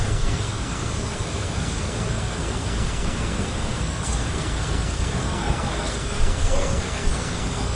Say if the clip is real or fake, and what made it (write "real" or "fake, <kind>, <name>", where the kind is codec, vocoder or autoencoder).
fake, codec, SNAC